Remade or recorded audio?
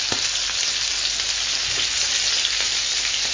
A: recorded